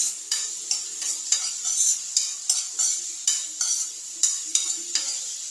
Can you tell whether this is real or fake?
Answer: fake